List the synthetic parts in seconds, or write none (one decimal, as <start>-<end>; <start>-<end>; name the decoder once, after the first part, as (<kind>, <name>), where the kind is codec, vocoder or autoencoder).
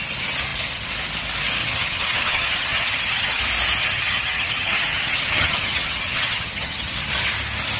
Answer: 1.6-3.4 (vocoder, HiFi-GAN); 3.8-7.0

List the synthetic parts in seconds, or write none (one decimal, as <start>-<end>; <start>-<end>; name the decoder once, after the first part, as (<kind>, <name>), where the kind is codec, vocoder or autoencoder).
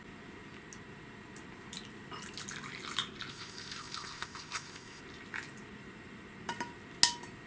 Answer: 3.3-5.0 (codec, ZipCodec)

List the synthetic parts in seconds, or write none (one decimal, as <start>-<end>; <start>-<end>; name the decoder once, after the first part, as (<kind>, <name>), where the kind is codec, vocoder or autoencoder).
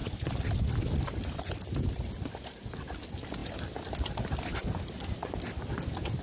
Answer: 0.0-2.6 (vocoder, BigVGAN v2)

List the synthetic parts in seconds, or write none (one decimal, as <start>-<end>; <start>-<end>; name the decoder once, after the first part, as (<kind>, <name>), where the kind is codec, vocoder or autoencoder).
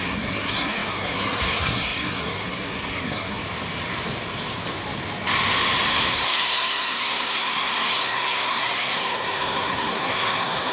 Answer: 0.0-3.4 (codec, SNAC); 5.9-10.7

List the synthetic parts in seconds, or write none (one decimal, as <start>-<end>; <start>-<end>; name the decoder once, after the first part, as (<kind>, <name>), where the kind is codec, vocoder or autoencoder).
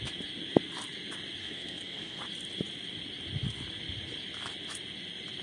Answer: 1.4-2.2 (codec, SNAC)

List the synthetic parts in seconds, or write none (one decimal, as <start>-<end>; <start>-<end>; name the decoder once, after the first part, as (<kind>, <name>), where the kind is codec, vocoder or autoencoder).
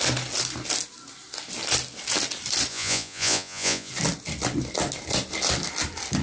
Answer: 2.7-3.9 (vocoder, Vocos)